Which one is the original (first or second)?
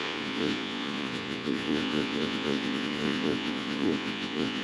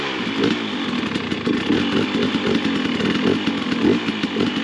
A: second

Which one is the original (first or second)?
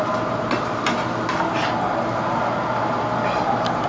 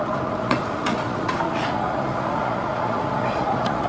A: first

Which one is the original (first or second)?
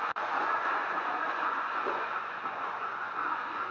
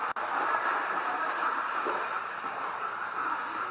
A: second